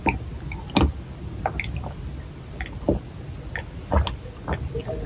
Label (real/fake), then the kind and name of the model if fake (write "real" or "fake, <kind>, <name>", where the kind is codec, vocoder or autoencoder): real